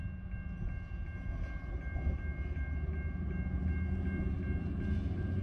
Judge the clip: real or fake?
real